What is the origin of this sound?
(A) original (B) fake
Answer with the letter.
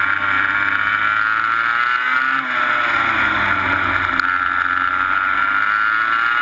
A